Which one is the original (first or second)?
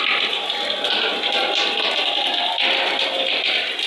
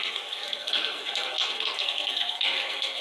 first